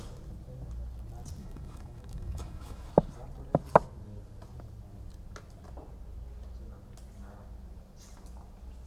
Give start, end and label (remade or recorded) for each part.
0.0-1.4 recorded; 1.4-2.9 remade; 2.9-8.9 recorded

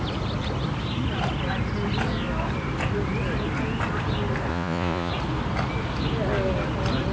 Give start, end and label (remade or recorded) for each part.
0.0-4.5 recorded; 4.5-5.1 remade; 5.1-7.1 recorded

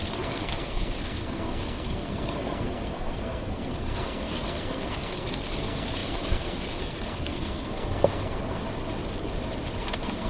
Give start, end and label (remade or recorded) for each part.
0.0-8.6 remade; 8.6-9.8 recorded; 9.8-10.3 remade

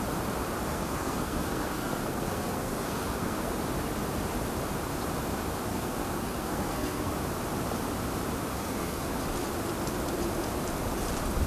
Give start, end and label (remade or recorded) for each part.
0.0-0.7 recorded; 0.7-3.5 remade; 3.5-5.7 recorded; 5.7-7.1 remade; 7.1-8.5 recorded; 8.5-9.2 remade; 9.2-11.5 recorded

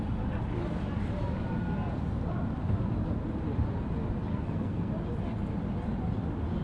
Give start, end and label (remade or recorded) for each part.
0.0-4.3 recorded; 4.3-4.9 remade; 4.9-6.6 recorded

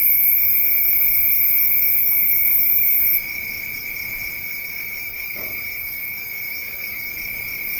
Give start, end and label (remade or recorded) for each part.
0.0-2.0 recorded; 2.0-3.0 remade; 3.0-4.4 recorded; 4.4-7.1 remade; 7.1-7.8 recorded

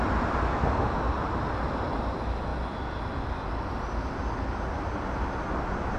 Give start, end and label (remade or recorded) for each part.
0.0-6.0 recorded

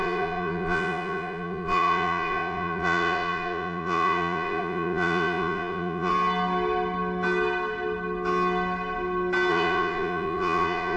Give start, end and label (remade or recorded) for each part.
0.0-6.1 remade; 6.1-9.5 recorded; 9.5-11.0 remade